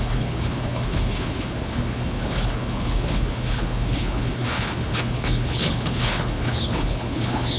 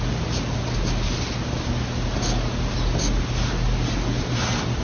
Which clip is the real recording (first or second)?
second